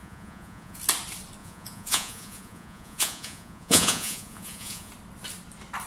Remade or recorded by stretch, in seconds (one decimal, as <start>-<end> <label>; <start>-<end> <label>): 0.0-0.8 remade; 0.8-1.4 recorded; 1.4-4.9 remade; 4.9-5.9 recorded